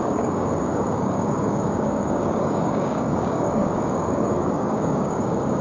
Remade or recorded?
remade